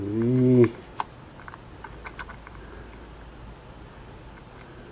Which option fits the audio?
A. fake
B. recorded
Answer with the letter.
B